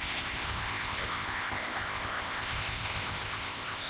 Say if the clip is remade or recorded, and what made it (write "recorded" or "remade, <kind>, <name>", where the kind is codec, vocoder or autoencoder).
remade, codec, ZipCodec